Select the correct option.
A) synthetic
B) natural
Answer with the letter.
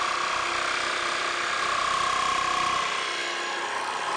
B